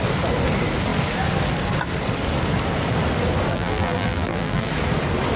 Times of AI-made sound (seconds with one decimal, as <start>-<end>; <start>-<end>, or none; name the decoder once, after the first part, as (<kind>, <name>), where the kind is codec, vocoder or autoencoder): 3.5-4.7 (vocoder, BigVGAN v2)